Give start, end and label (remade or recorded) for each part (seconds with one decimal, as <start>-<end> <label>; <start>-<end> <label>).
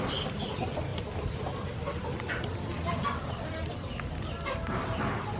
0.0-5.4 recorded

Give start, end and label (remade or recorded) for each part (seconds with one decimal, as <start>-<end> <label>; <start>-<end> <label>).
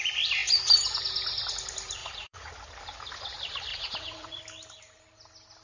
0.0-2.0 recorded; 2.0-2.5 remade; 2.5-3.7 recorded; 3.7-4.4 remade; 4.4-5.6 recorded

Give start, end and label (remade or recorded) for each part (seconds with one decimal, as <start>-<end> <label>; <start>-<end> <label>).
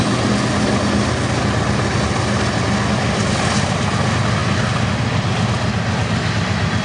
0.0-6.8 recorded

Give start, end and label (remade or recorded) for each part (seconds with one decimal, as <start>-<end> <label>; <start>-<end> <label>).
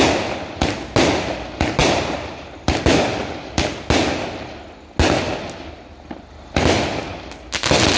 0.0-8.0 recorded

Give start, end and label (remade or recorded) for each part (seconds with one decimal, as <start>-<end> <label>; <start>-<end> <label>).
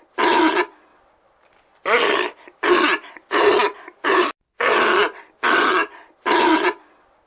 0.0-7.3 recorded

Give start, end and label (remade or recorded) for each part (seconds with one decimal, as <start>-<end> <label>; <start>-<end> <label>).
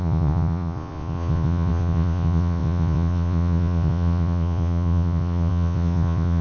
0.0-6.4 remade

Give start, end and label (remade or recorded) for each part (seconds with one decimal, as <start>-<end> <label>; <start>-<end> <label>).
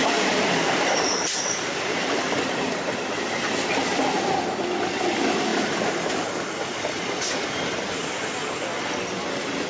0.0-2.0 remade; 2.0-9.7 recorded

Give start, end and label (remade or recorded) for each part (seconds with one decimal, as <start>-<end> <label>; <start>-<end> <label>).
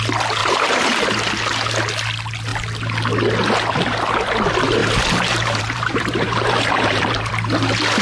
0.0-0.4 recorded; 0.4-1.0 remade; 1.0-4.8 recorded; 4.8-7.3 remade; 7.3-8.0 recorded